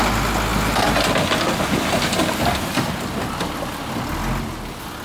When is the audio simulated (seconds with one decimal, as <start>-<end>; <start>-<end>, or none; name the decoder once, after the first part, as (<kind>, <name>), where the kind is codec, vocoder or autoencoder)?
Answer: none